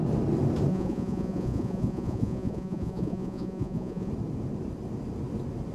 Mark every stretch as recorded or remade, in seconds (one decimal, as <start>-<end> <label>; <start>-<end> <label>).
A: 0.0-0.7 recorded; 0.7-4.1 remade; 4.1-5.7 recorded